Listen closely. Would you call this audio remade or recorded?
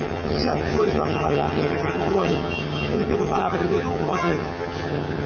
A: remade